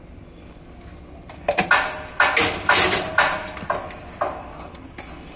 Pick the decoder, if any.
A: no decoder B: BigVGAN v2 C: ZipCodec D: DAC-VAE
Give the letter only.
A